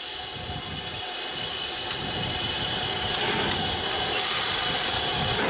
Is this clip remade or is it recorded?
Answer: recorded